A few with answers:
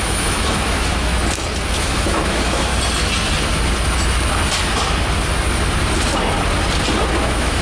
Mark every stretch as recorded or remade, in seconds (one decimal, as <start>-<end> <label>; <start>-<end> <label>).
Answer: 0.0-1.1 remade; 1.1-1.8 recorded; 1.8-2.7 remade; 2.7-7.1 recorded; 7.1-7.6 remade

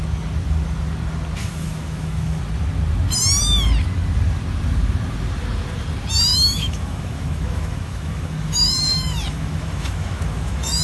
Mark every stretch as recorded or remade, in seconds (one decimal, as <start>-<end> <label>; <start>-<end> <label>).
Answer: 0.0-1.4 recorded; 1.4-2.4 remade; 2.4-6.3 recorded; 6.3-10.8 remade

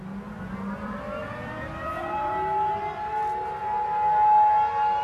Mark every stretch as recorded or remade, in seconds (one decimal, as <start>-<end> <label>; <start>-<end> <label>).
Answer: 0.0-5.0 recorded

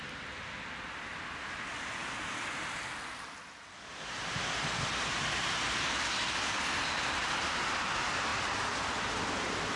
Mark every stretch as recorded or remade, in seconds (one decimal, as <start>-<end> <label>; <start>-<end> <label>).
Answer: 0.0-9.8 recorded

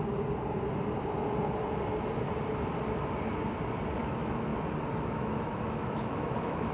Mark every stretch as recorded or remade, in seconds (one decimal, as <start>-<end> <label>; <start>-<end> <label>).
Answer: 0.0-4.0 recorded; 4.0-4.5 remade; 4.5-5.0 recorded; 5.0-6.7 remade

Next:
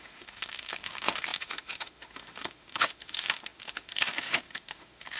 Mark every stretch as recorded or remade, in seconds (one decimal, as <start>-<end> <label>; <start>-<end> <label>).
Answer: 0.0-5.2 remade

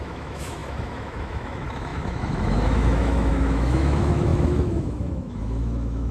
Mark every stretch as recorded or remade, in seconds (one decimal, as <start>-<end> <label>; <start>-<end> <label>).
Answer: 0.0-6.1 remade